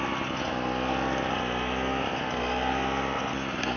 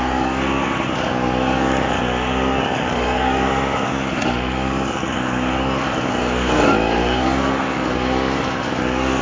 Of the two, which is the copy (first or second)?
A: second